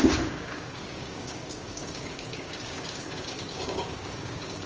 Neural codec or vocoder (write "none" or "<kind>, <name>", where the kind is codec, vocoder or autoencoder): codec, DAC